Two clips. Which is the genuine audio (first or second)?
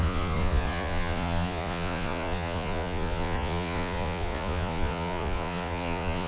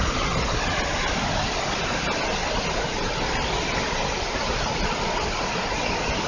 second